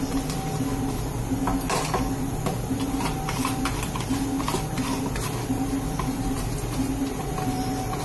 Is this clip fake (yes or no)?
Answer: no